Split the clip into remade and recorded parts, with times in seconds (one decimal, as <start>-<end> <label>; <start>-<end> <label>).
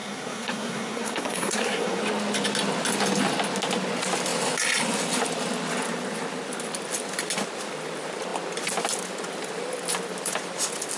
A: 0.0-2.0 remade; 2.0-11.0 recorded